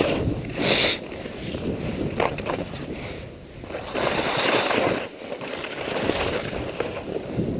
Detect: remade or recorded remade